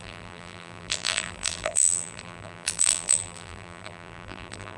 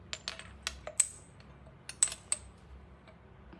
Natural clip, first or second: second